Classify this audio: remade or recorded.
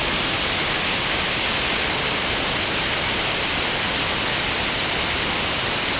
recorded